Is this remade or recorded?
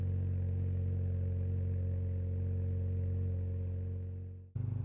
recorded